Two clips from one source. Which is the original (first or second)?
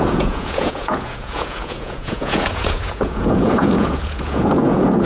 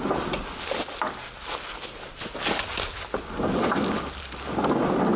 second